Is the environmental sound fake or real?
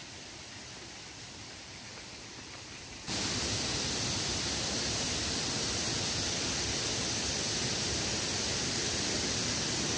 fake